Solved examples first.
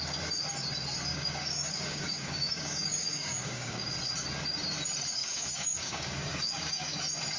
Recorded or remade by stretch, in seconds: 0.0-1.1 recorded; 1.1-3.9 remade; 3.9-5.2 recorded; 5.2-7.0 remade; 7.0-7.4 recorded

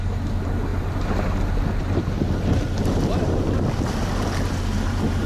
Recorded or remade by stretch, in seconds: 0.0-5.3 recorded

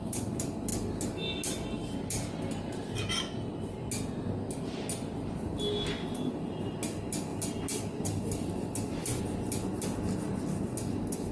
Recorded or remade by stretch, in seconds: 0.0-11.3 recorded